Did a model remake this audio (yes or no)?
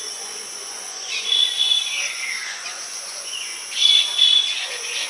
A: yes